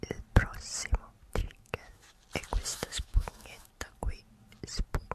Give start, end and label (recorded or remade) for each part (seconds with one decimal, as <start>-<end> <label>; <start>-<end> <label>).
0.0-1.4 recorded; 1.4-2.2 remade; 2.2-2.7 recorded; 2.7-3.7 remade; 3.7-5.1 recorded